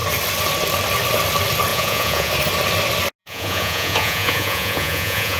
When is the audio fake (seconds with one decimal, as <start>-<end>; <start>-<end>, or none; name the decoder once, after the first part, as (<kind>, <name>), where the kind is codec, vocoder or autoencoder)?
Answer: 1.7-2.3 (vocoder, Vocos); 3.2-5.4